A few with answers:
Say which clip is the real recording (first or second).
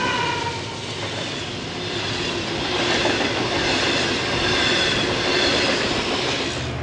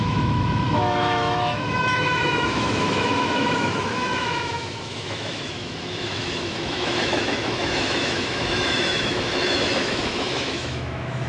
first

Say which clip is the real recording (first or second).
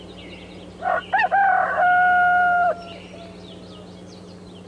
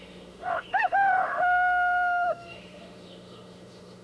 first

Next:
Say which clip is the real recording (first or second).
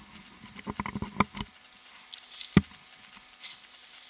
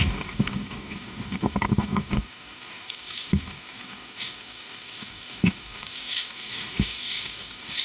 first